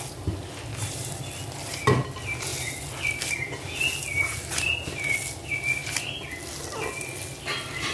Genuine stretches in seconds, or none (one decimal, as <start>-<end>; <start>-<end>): 0.0-0.7; 1.2-7.9